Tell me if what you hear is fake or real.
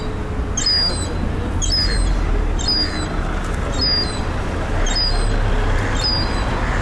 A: real